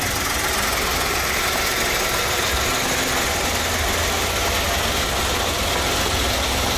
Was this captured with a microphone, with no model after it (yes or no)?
yes